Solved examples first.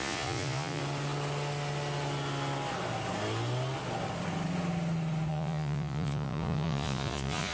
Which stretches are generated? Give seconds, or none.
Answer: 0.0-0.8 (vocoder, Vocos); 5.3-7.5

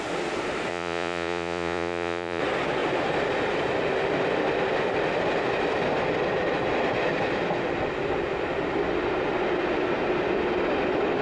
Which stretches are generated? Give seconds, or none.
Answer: 0.7-2.4 (vocoder, Vocos)

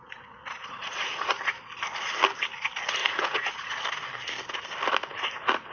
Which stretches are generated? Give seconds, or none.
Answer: 0.0-1.4 (vocoder, Vocos); 3.0-3.8

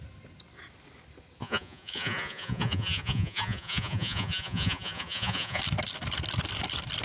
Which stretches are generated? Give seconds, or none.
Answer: 1.4-5.6 (vocoder, Vocos)

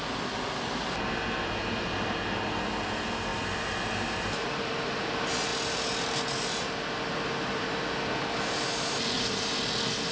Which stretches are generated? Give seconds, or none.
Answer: none

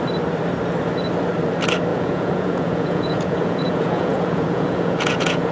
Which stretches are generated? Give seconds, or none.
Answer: 1.9-5.5 (vocoder, Vocos)